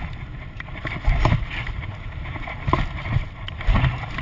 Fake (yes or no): yes